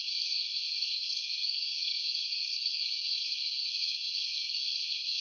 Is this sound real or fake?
fake